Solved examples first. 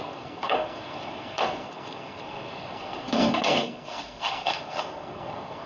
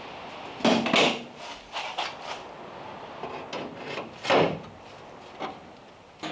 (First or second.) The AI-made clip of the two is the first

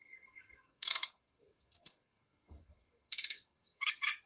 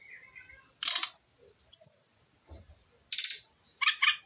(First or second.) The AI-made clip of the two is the first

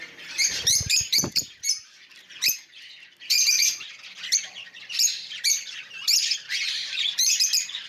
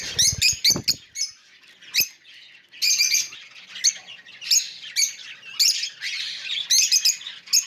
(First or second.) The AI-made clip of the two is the first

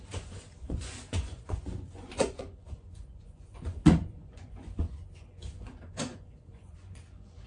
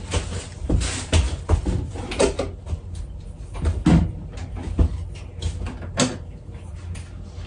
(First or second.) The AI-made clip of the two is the first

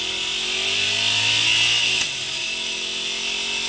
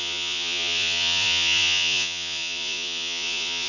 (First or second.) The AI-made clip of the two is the second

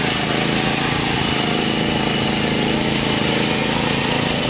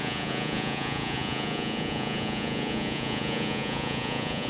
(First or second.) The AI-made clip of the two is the second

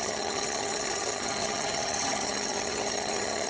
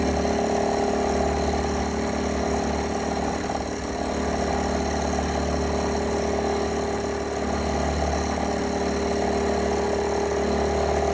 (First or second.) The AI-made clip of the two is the first